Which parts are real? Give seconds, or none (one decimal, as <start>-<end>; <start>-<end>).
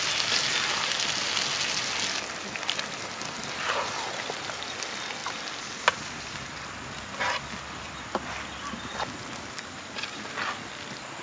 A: 0.0-11.2